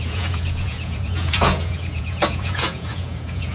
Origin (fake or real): fake